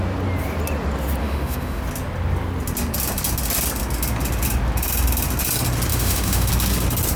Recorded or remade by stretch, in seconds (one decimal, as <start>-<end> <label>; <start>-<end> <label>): 0.0-1.2 recorded; 1.2-1.8 remade; 1.8-5.9 recorded; 5.9-6.5 remade; 6.5-7.2 recorded